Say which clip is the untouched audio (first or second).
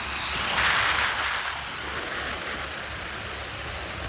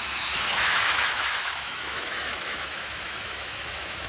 first